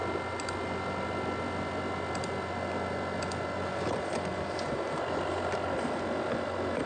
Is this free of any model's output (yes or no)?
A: yes